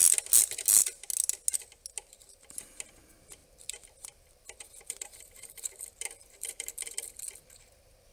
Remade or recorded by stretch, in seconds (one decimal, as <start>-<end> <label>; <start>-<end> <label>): 0.0-3.4 recorded; 3.4-7.2 remade; 7.2-8.1 recorded